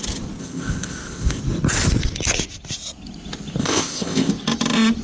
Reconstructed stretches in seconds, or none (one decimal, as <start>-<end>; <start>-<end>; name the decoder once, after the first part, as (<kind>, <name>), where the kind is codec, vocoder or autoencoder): 0.4-1.4 (codec, ZipCodec); 3.6-4.3